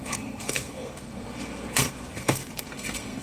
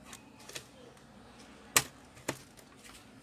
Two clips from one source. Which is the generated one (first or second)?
first